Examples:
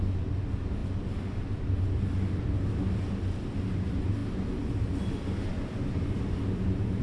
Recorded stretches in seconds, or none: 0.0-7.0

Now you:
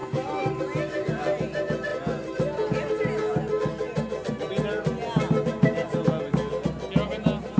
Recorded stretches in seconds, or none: 0.0-7.6

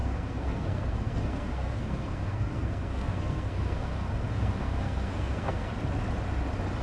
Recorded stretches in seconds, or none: 5.7-6.8

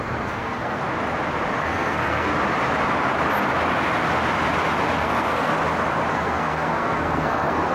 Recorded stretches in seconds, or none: 0.8-1.6; 2.3-5.0; 5.5-6.1

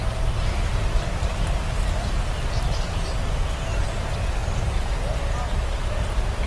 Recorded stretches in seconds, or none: 0.0-6.5

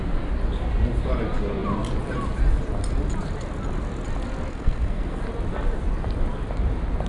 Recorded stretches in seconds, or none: 0.0-4.5; 5.2-7.1